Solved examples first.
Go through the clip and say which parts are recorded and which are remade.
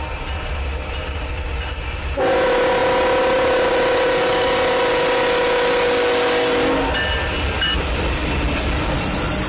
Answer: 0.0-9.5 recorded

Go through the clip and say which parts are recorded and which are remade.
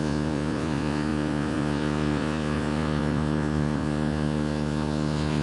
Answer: 0.0-5.4 remade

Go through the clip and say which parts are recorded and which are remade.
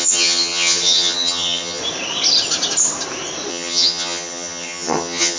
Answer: 0.0-1.8 remade; 1.8-3.5 recorded; 3.5-5.4 remade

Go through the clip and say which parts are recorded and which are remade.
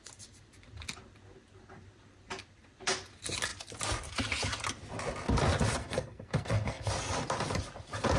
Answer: 0.0-5.8 recorded; 5.8-6.9 remade; 6.9-8.2 recorded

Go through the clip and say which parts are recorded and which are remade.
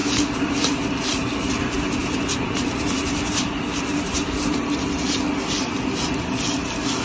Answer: 0.0-2.0 recorded; 2.0-5.2 remade; 5.2-7.0 recorded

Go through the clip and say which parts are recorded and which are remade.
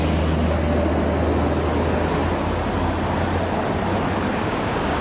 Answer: 0.0-4.3 recorded; 4.3-5.0 remade